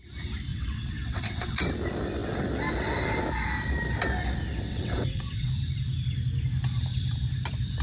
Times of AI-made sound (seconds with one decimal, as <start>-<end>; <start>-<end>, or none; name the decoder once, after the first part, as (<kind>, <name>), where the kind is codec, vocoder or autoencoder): 0.5-1.6 (vocoder, WaveNeXt); 4.7-5.5

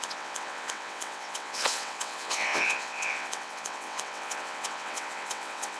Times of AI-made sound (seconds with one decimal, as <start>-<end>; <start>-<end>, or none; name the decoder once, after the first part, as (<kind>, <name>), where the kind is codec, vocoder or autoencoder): 0.0-5.8 (vocoder, WaveNeXt)

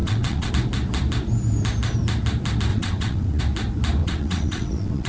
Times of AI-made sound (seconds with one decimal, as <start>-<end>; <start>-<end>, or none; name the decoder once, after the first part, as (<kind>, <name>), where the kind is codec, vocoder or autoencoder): 0.0-0.5 (vocoder, WaveNeXt); 2.7-3.4; 4.0-5.1

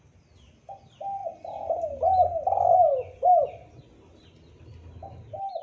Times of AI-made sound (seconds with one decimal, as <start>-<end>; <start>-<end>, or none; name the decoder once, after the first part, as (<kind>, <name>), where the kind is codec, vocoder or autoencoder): none

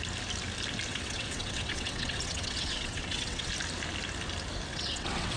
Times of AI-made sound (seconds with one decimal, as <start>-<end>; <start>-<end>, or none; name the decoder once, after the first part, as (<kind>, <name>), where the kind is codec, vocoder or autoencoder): 0.9-3.5 (vocoder, WaveNeXt); 4.7-5.4

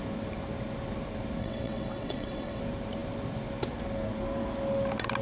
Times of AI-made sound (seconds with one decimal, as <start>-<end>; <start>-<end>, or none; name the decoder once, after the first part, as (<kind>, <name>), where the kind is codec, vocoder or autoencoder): 1.4-2.6 (vocoder, WaveNeXt)

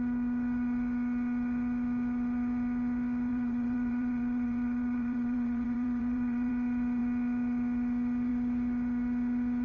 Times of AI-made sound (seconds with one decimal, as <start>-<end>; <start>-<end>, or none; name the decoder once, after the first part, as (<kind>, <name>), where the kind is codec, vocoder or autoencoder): 3.3-6.5 (vocoder, WaveNeXt)

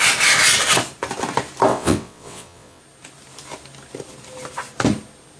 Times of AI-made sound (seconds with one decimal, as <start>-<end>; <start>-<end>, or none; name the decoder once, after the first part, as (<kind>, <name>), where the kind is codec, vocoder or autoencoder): 1.7-2.8 (vocoder, WaveNeXt)